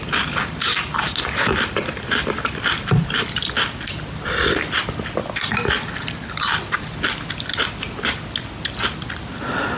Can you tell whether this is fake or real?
real